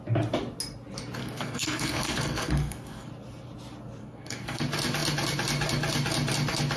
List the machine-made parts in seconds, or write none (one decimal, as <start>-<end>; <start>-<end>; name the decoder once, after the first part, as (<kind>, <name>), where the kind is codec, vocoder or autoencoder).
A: 1.2-3.1 (codec, SNAC); 4.0-4.6